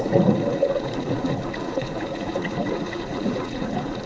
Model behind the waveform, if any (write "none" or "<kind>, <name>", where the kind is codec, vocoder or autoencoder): vocoder, Vocos